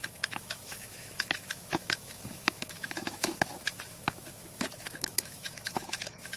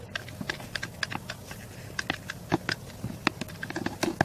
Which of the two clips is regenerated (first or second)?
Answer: first